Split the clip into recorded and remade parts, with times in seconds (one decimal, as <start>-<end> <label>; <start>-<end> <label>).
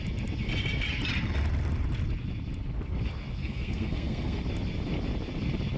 0.0-3.4 recorded; 3.4-4.4 remade; 4.4-5.8 recorded